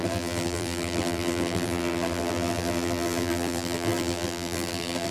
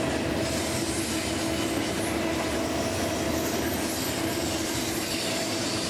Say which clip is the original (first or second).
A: second